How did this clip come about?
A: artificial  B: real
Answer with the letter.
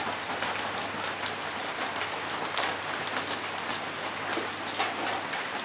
B